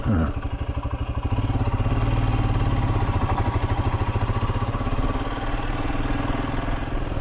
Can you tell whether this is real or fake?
real